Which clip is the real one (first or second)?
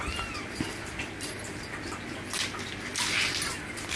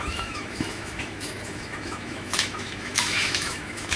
first